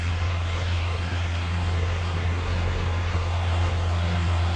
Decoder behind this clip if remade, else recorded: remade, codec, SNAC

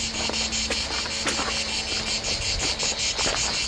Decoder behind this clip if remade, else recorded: recorded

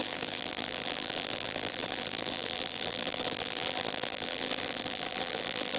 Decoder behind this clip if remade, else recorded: remade, vocoder, BigVGAN v2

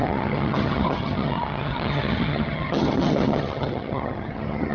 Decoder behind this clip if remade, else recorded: remade, vocoder, HiFi-GAN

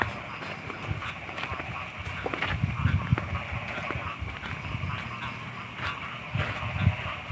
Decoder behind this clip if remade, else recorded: recorded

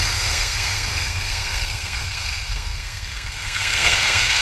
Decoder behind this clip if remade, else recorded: remade, codec, SNAC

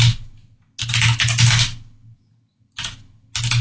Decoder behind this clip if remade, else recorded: recorded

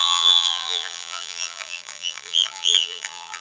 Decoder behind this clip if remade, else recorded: remade, vocoder, BigVGAN v2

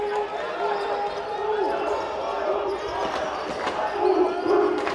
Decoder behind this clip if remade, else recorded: recorded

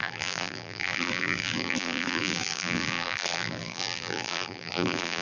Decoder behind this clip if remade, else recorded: remade, vocoder, BigVGAN v2